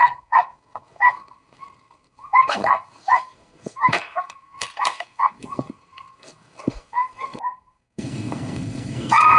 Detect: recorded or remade remade